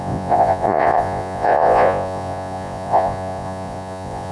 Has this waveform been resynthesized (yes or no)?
yes